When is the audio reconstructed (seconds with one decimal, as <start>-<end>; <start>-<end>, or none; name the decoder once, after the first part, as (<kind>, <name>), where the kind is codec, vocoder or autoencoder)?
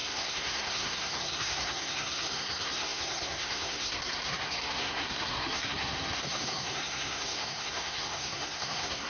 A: 0.0-9.1 (codec, SNAC)